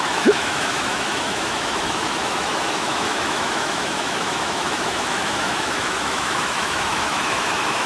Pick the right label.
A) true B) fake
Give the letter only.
B